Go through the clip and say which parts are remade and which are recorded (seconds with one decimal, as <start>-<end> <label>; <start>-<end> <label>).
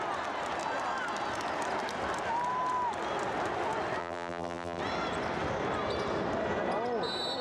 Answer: 0.0-4.0 recorded; 4.0-4.8 remade; 4.8-7.4 recorded